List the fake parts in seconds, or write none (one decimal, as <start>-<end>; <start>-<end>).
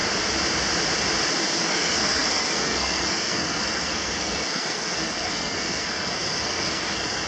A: 1.6-7.3